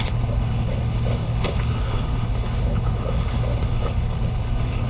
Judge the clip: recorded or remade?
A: remade